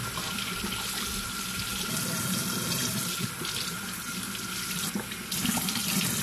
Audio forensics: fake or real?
real